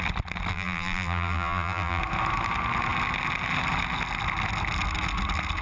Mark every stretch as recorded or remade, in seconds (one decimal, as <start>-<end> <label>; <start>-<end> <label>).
0.0-0.5 recorded; 0.5-2.0 remade; 2.0-5.6 recorded